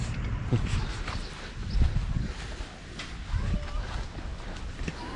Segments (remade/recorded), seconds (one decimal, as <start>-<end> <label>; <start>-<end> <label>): 0.0-1.6 remade; 1.6-4.7 recorded; 4.7-5.2 remade